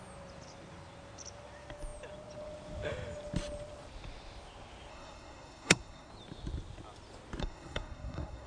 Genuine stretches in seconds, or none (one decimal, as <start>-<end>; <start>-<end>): 0.0-4.9; 6.1-7.4